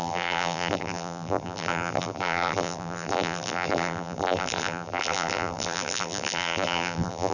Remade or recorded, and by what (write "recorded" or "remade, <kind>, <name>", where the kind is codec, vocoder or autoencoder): remade, vocoder, BigVGAN v2